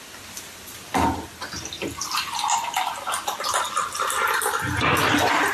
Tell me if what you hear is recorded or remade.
recorded